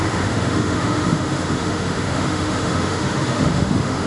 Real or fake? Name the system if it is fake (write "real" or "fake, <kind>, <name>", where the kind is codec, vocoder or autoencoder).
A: fake, autoencoder, DAC-VAE